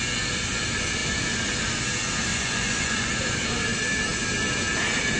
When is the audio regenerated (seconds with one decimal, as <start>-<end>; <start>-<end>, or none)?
2.3-3.1